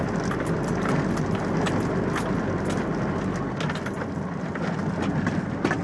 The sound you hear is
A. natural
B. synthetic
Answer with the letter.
A